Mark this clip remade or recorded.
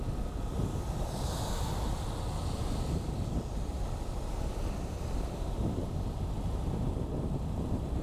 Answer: recorded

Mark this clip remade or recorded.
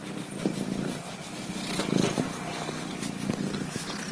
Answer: recorded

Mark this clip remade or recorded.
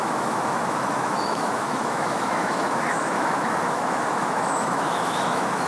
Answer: remade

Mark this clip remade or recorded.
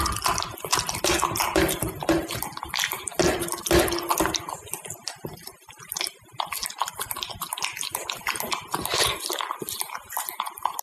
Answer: recorded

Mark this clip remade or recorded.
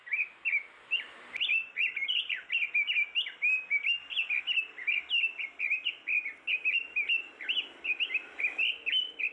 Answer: recorded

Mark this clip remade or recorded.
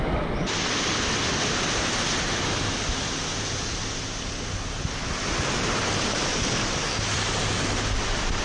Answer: recorded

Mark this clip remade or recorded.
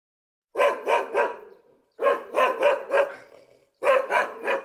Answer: recorded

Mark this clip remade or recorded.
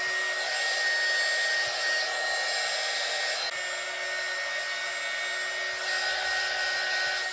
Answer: recorded